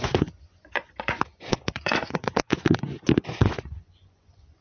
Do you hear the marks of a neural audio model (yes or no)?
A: yes